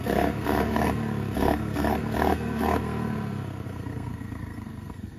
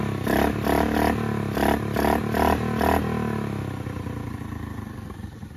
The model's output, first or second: first